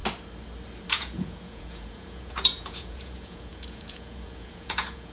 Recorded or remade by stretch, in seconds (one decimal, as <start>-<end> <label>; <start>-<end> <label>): 0.0-0.9 recorded; 0.9-5.1 remade

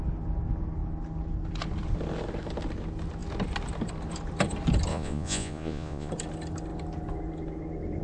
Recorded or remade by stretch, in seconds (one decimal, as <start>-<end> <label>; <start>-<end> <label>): 0.0-4.9 recorded; 4.9-6.1 remade; 6.1-8.0 recorded